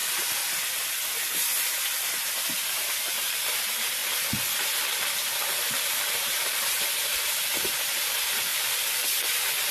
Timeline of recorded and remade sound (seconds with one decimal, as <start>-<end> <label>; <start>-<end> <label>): 0.0-1.8 recorded; 1.8-4.0 remade; 4.0-6.1 recorded; 6.1-8.5 remade; 8.5-9.7 recorded